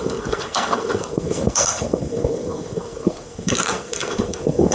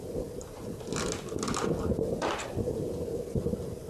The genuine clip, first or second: second